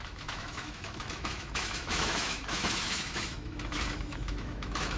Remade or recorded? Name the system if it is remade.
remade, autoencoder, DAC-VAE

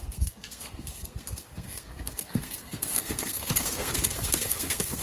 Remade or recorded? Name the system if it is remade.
remade, codec, SNAC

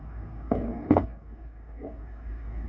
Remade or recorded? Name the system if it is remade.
remade, codec, DAC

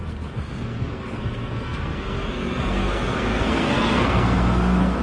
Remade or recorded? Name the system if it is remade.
remade, codec, SNAC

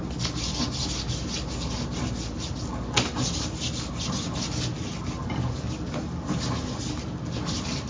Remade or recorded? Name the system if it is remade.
recorded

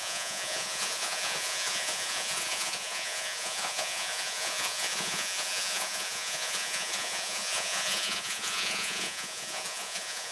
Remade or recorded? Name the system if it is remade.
remade, vocoder, Vocos